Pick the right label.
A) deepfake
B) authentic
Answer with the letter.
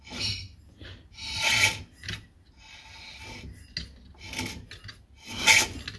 B